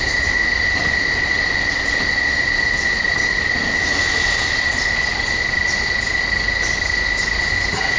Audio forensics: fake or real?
real